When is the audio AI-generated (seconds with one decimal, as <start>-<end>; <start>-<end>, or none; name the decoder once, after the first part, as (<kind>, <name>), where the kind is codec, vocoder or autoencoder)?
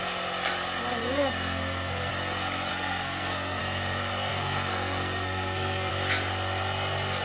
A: 1.0-2.1 (codec, SNAC); 2.7-3.6; 4.3-5.9